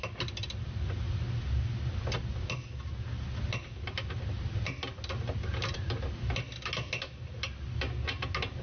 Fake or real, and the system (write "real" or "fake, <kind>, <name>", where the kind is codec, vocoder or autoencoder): real